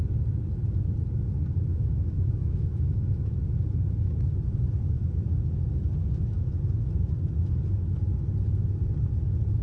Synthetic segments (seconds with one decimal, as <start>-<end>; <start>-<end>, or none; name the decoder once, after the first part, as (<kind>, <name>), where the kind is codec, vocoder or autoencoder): 1.7-3.4 (autoencoder, DAC-VAE); 6.0-6.6